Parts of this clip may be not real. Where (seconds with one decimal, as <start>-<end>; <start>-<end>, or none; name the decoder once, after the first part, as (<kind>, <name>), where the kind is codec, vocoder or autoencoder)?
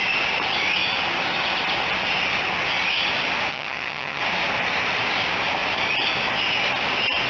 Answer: 3.5-4.2 (vocoder, HiFi-GAN)